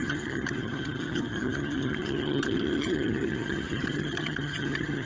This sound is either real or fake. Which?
fake